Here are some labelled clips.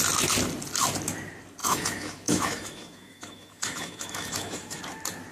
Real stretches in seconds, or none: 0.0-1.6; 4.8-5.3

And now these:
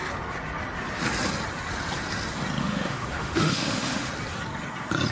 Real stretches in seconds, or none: 0.0-2.6; 4.1-5.1